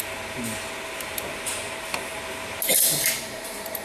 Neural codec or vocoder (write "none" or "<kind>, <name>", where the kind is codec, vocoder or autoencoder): none